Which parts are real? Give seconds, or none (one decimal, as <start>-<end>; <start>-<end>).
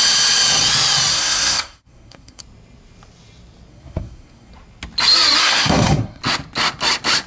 0.0-1.1; 2.4-3.7; 4.5-5.4; 6.2-7.3